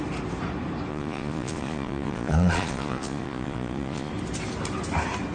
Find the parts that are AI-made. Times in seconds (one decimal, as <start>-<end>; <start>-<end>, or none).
0.9-4.1